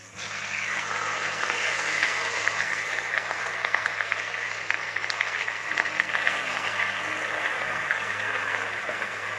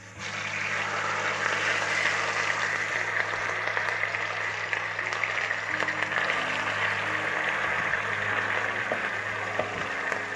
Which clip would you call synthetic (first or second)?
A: first